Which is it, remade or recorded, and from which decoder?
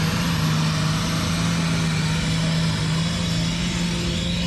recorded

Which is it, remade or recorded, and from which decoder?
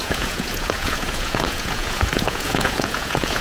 remade, vocoder, Vocos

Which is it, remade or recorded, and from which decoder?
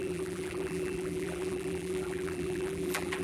remade, vocoder, BigVGAN v2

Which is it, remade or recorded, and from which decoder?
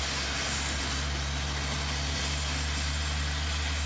recorded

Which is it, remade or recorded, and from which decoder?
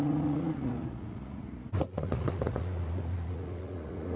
remade, vocoder, Vocos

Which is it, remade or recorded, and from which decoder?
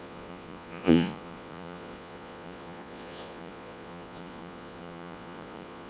remade, vocoder, Vocos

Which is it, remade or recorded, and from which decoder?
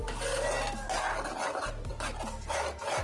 recorded